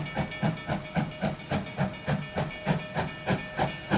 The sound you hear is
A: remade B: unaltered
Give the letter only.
B